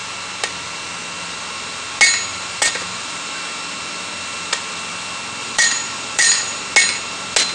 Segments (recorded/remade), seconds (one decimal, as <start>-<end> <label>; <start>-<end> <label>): 0.0-2.3 recorded; 2.3-3.3 remade; 3.3-5.4 recorded; 5.4-6.6 remade; 6.6-7.5 recorded